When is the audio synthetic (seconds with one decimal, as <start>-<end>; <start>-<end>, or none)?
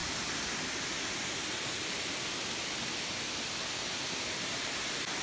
none